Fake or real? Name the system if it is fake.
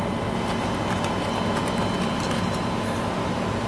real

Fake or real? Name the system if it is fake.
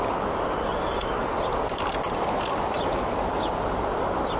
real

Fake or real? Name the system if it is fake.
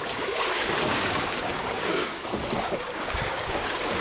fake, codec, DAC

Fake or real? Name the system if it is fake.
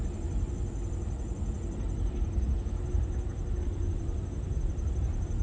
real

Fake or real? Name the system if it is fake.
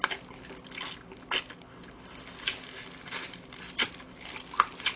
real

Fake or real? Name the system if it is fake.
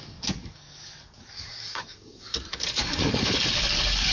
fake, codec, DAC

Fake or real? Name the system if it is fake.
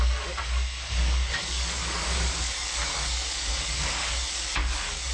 fake, codec, DAC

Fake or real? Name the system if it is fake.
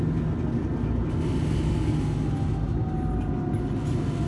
real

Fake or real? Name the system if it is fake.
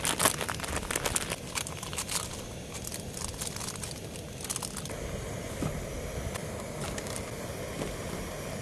real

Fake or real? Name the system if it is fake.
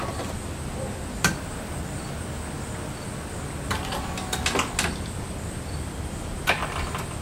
real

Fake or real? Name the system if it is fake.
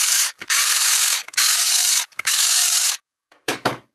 fake, codec, DAC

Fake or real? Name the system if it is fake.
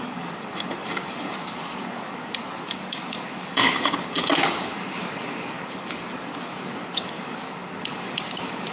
fake, codec, DAC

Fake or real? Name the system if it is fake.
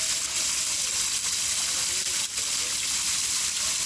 real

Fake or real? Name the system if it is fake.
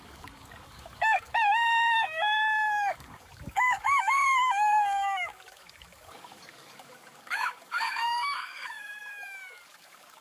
fake, codec, DAC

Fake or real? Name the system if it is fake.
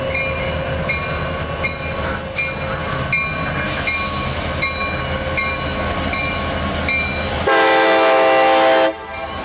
real